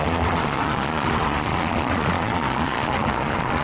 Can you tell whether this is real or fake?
fake